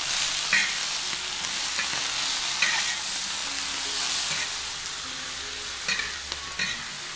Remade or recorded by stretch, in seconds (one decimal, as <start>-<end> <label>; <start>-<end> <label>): 0.0-7.2 recorded